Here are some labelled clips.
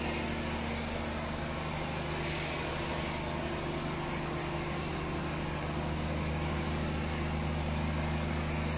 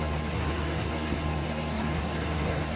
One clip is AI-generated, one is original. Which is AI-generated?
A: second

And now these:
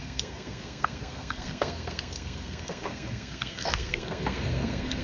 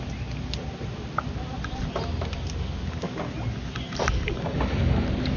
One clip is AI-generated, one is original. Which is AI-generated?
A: first